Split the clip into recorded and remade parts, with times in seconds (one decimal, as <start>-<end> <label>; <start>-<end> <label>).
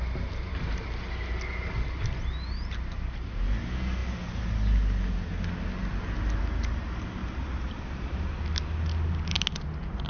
0.0-7.2 recorded; 7.2-8.3 remade; 8.3-10.1 recorded